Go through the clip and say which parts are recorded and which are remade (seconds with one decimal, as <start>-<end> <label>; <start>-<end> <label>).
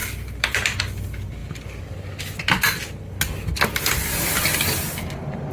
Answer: 0.0-0.8 remade; 0.8-5.5 recorded